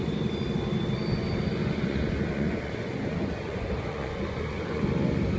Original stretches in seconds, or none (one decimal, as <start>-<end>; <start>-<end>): 0.0-1.6; 4.8-5.4